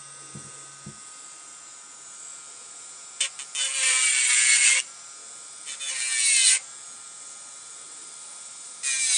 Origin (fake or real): real